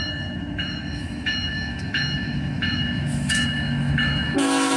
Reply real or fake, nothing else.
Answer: fake